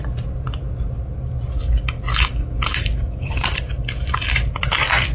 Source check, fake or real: real